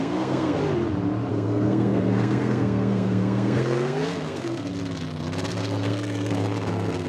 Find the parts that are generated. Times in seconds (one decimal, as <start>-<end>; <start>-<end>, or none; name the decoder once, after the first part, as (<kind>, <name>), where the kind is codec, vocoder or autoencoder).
0.0-0.6 (codec, SNAC); 1.3-4.7; 5.5-7.1